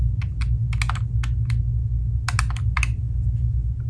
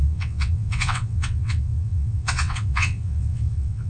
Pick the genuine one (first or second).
first